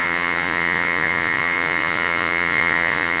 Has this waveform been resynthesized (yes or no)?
yes